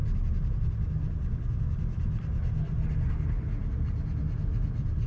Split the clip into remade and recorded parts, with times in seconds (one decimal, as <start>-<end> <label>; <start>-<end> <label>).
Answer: 0.0-3.1 recorded; 3.1-3.5 remade; 3.5-5.1 recorded

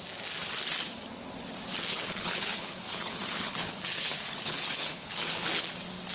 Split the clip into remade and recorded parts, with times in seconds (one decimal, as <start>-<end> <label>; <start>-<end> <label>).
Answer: 0.0-1.9 recorded; 1.9-5.6 remade; 5.6-6.1 recorded

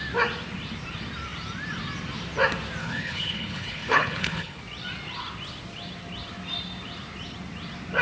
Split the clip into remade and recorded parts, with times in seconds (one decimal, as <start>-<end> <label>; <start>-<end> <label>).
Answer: 0.0-2.8 recorded; 2.8-4.6 remade; 4.6-8.0 recorded

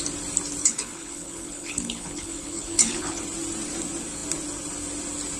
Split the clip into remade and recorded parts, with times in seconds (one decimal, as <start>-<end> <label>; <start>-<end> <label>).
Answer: 0.0-0.6 recorded; 0.6-3.2 remade; 3.2-5.4 recorded

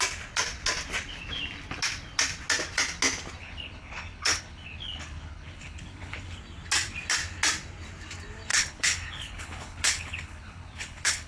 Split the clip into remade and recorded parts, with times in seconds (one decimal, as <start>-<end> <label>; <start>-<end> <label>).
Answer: 0.0-3.4 recorded; 3.4-6.3 remade; 6.3-8.5 recorded; 8.5-11.3 remade